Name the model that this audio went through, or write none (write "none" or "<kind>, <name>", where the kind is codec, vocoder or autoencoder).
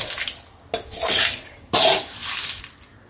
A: none